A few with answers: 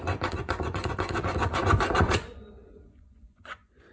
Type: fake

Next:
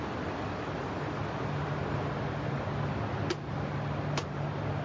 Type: real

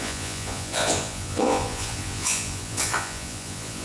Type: fake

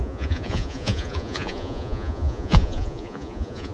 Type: fake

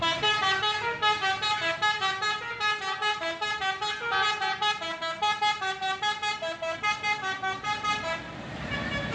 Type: real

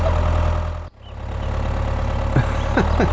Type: real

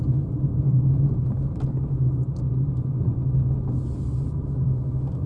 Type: real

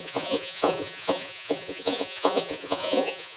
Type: fake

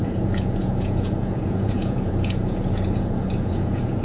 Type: fake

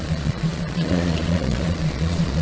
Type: fake